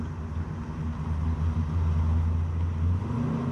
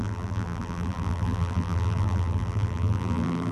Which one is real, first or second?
first